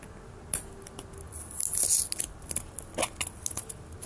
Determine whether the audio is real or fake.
real